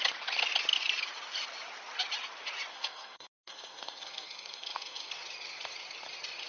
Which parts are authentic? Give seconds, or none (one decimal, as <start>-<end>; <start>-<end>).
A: 0.0-2.7; 5.1-6.5